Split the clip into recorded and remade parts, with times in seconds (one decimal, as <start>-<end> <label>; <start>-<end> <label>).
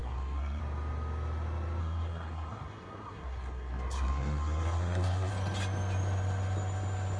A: 0.0-0.6 remade; 0.6-1.8 recorded; 1.8-5.3 remade; 5.3-7.2 recorded